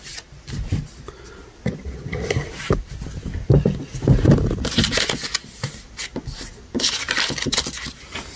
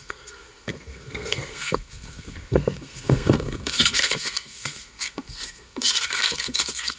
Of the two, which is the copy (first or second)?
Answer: second